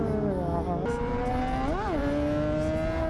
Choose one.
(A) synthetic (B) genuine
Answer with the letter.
B